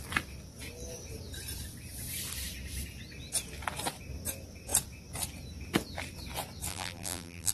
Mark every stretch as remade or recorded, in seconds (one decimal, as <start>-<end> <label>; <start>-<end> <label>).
0.0-6.7 recorded; 6.7-7.5 remade